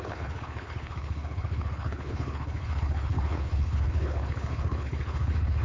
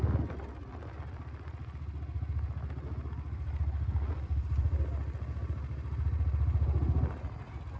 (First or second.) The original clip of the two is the second